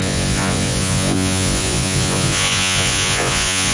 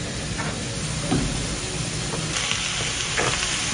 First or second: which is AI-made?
first